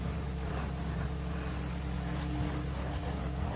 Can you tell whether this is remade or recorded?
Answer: recorded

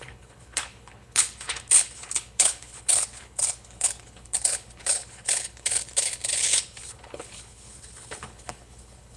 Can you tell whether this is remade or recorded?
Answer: remade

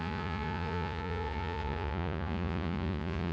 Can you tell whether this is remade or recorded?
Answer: remade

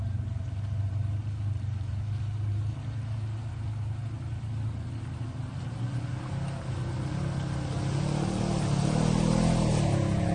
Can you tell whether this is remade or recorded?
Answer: recorded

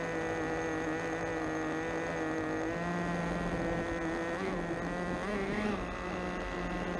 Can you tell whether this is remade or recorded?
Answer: recorded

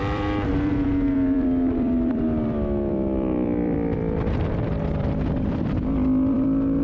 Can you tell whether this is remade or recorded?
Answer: remade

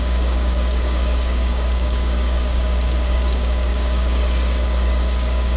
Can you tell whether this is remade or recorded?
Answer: remade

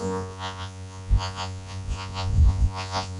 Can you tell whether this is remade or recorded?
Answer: remade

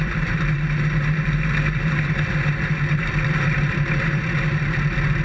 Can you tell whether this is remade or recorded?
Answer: remade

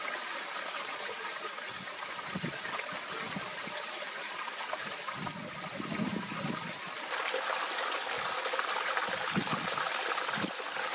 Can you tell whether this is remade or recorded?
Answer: recorded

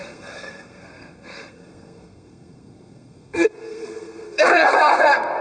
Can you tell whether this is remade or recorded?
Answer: remade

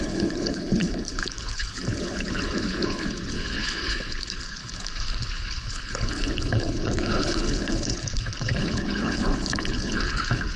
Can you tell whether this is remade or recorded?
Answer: remade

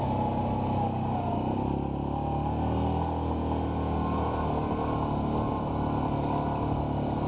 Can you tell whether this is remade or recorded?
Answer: recorded